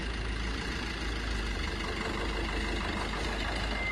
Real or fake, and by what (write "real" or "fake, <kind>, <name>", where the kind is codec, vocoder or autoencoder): real